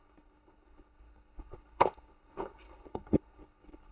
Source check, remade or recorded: remade